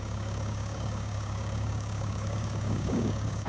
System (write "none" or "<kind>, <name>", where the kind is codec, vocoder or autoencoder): codec, DAC